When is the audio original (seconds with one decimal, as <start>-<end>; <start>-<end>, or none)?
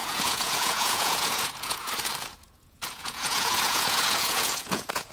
1.9-2.3